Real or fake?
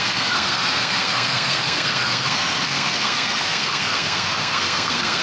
fake